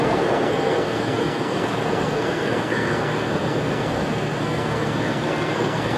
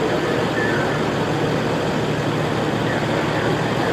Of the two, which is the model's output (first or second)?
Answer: first